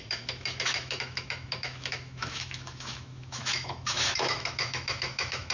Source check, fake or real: fake